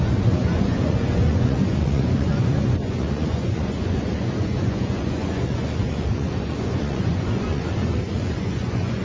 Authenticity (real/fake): fake